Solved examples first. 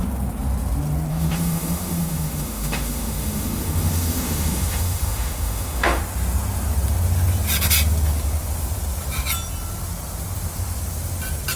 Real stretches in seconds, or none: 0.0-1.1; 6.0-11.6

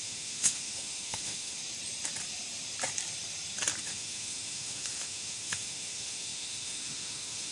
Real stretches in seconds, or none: 1.6-3.8

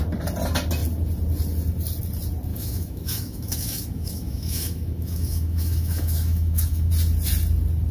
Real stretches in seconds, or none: 0.0-2.5; 6.9-7.9

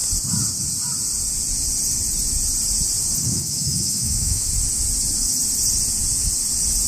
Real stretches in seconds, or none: 0.0-3.3; 4.5-6.9

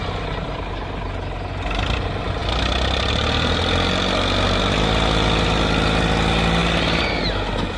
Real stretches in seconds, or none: 0.0-7.8